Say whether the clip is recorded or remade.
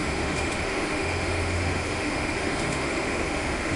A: remade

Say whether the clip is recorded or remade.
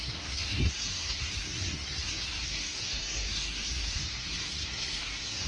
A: remade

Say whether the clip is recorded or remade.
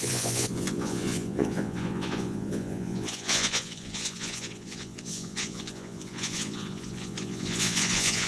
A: remade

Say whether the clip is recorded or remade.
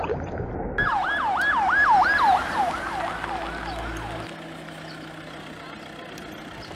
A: recorded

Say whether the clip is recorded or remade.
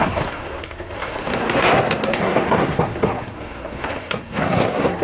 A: remade